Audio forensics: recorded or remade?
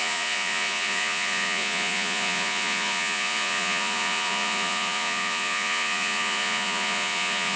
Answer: remade